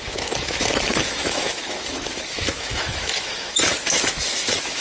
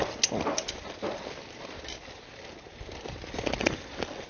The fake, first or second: first